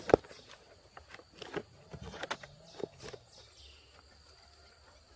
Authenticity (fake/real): real